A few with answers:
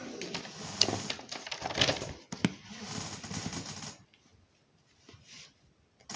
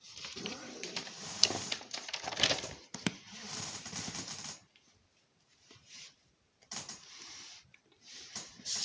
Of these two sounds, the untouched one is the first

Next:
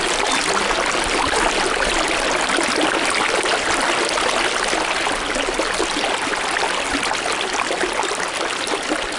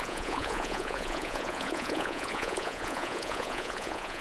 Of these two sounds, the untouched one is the first